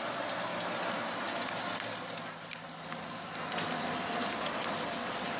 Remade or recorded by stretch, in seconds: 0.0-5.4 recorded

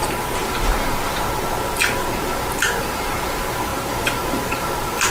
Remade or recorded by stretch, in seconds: 0.0-0.7 remade; 0.7-2.5 recorded; 2.5-5.1 remade

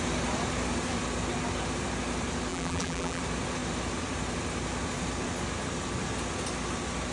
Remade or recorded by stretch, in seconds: 0.0-2.5 recorded; 2.5-3.2 remade; 3.2-7.1 recorded

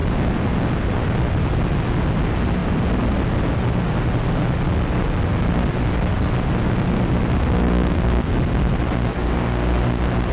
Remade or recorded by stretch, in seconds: 0.0-10.3 recorded